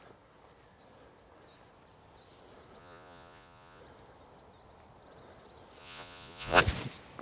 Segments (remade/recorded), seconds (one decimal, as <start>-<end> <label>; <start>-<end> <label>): 0.0-2.8 recorded; 2.8-3.8 remade; 3.8-5.8 recorded; 5.8-6.6 remade; 6.6-7.2 recorded